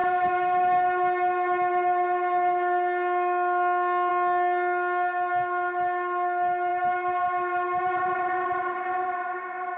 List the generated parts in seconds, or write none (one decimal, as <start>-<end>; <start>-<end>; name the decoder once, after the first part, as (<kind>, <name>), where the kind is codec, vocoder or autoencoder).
none